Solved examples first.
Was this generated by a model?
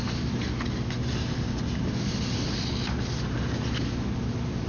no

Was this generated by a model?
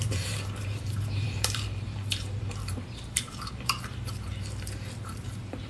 yes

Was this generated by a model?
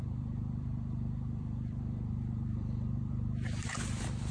yes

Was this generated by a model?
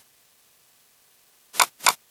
no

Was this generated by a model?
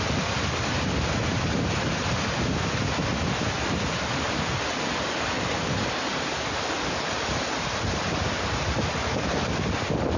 no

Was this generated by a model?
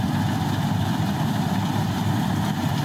yes